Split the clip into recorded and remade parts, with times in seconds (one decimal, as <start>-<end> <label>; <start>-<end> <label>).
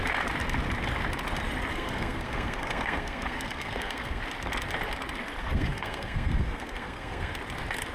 0.0-1.7 recorded; 1.7-4.2 remade; 4.2-5.4 recorded; 5.4-7.3 remade; 7.3-7.9 recorded